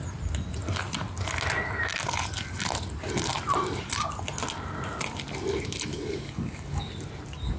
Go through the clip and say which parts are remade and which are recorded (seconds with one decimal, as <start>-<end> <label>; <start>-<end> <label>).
0.0-5.9 recorded; 5.9-6.9 remade; 6.9-7.6 recorded